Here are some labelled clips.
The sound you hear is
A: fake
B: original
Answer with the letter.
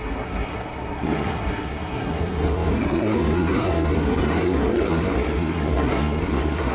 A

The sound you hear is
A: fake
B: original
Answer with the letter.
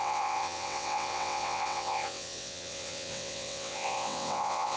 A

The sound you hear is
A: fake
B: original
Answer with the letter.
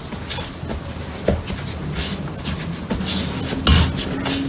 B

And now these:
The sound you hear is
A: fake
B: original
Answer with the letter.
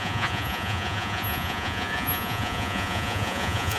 A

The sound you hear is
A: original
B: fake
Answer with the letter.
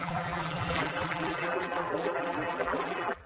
B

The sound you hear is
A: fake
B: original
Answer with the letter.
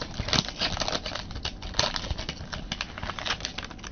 B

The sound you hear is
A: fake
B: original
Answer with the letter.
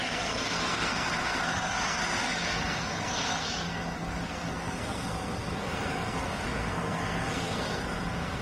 A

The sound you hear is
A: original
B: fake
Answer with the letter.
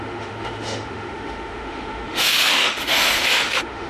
B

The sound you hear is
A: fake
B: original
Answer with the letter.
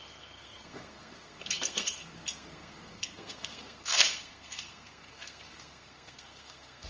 A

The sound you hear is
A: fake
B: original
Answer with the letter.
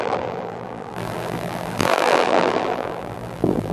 A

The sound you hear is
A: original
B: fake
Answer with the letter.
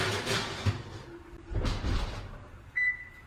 A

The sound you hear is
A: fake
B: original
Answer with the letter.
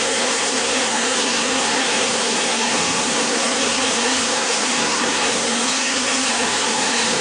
A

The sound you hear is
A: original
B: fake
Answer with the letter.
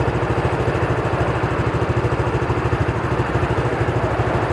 A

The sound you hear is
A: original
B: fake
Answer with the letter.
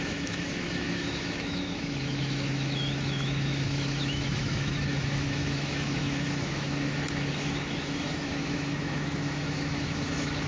B